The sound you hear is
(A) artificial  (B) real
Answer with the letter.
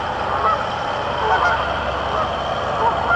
B